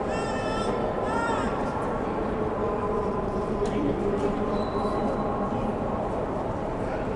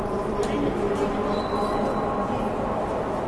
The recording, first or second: second